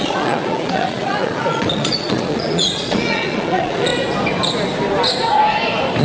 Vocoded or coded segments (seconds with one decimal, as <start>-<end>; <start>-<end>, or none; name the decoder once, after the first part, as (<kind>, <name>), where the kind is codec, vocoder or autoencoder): 0.0-3.9 (vocoder, Vocos)